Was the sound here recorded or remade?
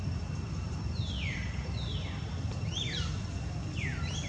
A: remade